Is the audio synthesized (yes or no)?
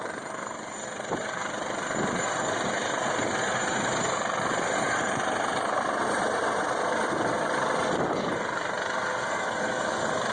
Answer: no